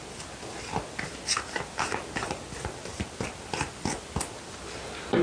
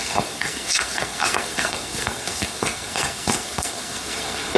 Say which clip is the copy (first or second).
second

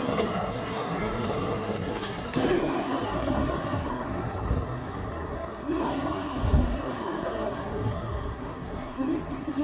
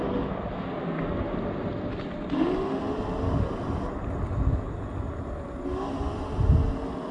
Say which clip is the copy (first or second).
first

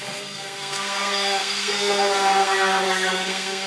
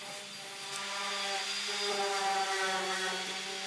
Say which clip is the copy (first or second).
first